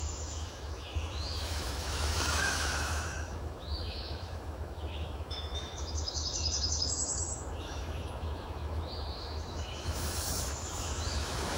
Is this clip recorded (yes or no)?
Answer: no